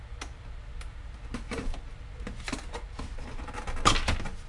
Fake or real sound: real